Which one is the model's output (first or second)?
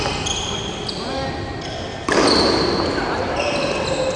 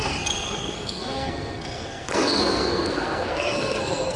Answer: second